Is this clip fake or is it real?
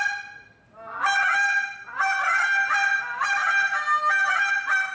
real